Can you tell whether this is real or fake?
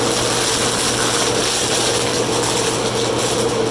real